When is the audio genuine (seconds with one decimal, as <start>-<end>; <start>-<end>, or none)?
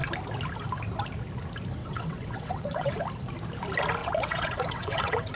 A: 0.0-1.8; 2.9-4.0